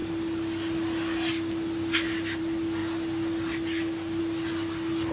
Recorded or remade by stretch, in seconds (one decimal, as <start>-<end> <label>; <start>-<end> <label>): 0.0-5.1 recorded